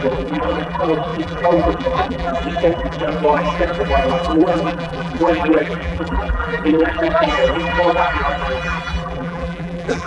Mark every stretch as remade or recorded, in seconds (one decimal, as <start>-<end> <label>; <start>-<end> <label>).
0.0-10.1 remade